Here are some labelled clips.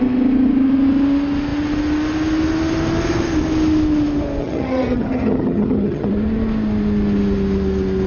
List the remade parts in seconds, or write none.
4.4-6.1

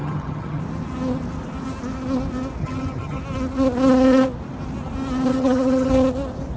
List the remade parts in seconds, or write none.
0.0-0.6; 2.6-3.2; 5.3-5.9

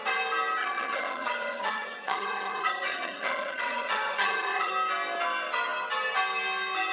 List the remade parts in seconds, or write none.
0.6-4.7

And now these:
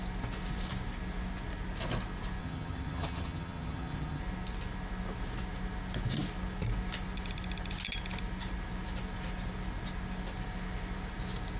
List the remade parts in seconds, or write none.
2.4-4.2

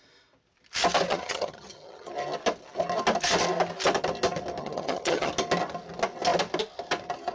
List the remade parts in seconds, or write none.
1.1-2.1; 4.6-5.3

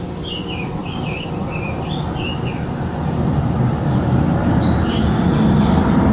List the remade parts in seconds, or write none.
none

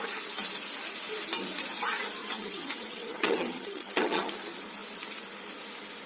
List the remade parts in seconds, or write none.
2.2-4.3